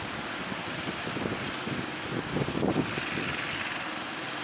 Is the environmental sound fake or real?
real